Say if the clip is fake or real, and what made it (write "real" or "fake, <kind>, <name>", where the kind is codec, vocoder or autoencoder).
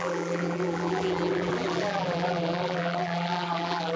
fake, vocoder, BigVGAN v2